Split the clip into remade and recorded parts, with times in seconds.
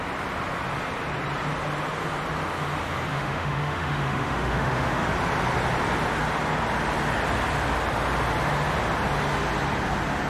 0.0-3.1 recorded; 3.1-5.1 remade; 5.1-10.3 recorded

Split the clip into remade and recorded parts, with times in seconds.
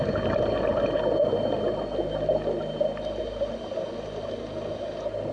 0.0-5.3 recorded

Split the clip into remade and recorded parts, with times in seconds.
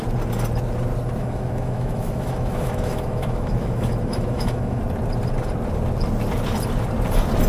0.0-1.2 recorded; 1.2-4.8 remade; 4.8-7.5 recorded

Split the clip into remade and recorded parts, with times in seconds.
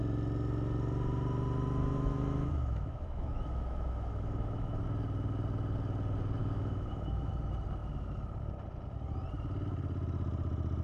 0.0-1.8 recorded; 1.8-4.8 remade; 4.8-6.4 recorded; 6.4-7.3 remade; 7.3-10.8 recorded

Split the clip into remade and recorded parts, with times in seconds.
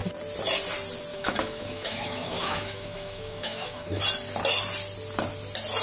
0.0-1.1 recorded; 1.1-4.0 remade; 4.0-5.8 recorded